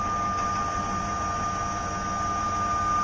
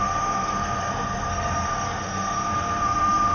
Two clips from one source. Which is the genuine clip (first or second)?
first